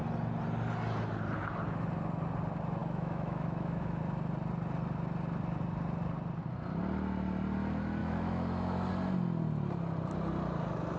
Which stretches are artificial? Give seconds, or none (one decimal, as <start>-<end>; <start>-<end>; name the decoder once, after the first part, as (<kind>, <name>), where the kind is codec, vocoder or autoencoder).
2.8-4.0 (autoencoder, DAC-VAE); 8.0-8.9